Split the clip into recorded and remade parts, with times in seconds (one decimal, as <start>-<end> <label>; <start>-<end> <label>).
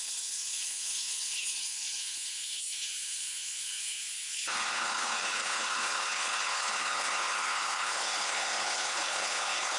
0.0-9.8 remade